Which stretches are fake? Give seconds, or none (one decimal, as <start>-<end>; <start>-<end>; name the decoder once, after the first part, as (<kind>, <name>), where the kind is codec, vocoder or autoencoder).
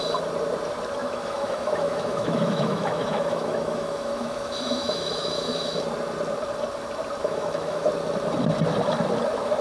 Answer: 1.0-5.8 (autoencoder, DAC-VAE); 7.2-7.9